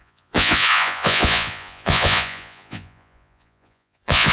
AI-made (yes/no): yes